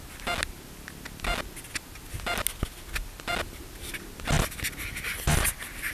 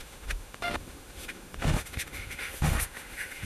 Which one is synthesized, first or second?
second